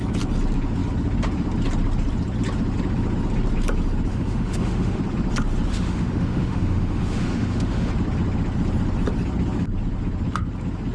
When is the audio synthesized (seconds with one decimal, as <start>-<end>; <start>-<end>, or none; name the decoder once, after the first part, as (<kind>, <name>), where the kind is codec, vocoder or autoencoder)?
4.1-5.0 (autoencoder, DAC-VAE); 5.7-7.9